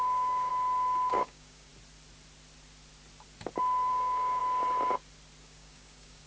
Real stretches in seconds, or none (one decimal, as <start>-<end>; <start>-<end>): 0.5-1.1; 1.7-3.9; 4.4-5.4